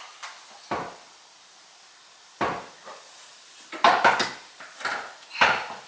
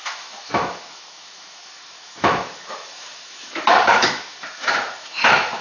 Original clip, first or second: first